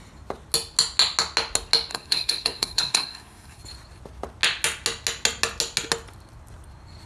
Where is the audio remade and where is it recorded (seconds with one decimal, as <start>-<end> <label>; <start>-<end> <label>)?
0.0-1.9 recorded; 1.9-3.6 remade; 3.6-7.1 recorded

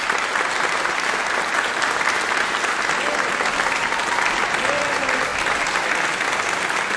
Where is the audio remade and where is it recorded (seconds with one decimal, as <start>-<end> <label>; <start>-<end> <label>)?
0.0-7.0 recorded

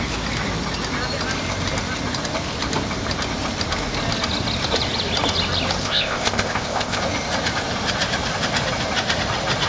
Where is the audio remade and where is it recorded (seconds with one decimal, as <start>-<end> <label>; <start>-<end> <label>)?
0.0-5.8 recorded; 5.8-7.0 remade; 7.0-9.7 recorded

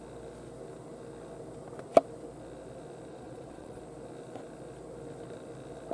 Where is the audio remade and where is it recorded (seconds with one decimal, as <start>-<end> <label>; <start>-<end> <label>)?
0.0-3.1 recorded; 3.1-3.8 remade; 3.8-5.9 recorded